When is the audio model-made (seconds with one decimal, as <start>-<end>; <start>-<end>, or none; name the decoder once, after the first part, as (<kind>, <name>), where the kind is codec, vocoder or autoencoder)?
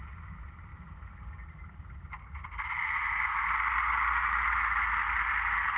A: none